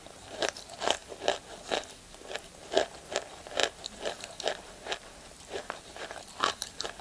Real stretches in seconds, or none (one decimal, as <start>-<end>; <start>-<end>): 1.0-2.5